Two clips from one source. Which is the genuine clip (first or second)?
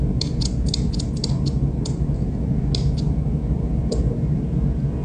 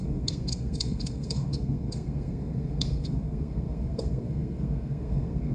first